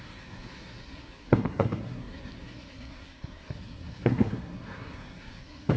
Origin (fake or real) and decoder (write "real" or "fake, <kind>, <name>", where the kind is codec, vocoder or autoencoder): fake, codec, SNAC